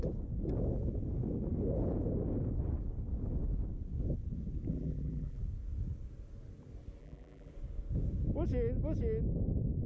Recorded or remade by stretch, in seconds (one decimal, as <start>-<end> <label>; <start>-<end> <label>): 0.0-4.7 recorded; 4.7-5.4 remade; 5.4-7.0 recorded; 7.0-7.5 remade; 7.5-9.9 recorded